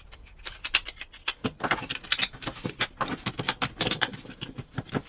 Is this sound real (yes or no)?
yes